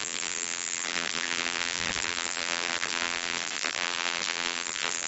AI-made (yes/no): yes